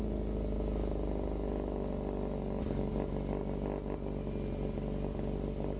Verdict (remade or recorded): recorded